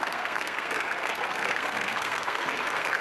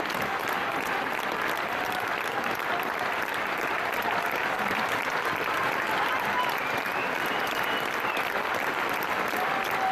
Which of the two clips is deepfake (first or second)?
first